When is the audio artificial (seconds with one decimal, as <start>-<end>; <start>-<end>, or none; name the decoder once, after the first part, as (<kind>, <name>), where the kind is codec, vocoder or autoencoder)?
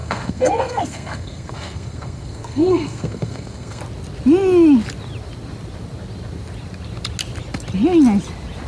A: 0.0-3.8 (codec, SNAC)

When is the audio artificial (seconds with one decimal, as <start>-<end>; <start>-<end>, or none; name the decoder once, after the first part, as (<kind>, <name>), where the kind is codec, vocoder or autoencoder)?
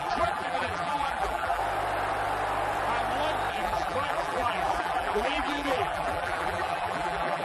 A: 0.0-1.6 (vocoder, BigVGAN v2); 3.5-7.4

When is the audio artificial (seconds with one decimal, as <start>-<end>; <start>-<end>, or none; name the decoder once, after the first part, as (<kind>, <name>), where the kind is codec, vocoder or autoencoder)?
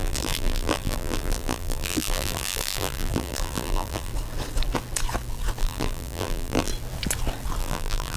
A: 0.0-4.1 (vocoder, BigVGAN v2); 5.6-6.7; 7.6-8.2